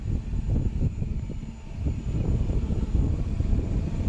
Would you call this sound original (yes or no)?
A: no